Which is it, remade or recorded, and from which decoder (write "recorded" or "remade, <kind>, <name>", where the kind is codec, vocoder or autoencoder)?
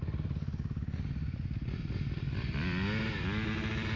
recorded